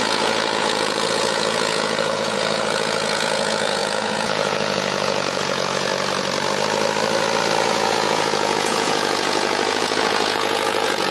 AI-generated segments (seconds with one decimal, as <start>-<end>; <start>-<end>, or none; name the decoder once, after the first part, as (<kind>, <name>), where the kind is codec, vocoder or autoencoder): 0.0-5.9 (vocoder, Vocos); 7.6-11.1